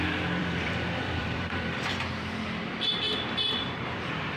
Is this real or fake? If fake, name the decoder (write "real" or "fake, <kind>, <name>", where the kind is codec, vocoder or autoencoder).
fake, vocoder, BigVGAN v2